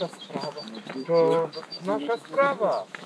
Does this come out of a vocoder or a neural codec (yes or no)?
yes